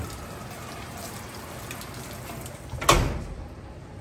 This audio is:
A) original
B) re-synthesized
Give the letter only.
A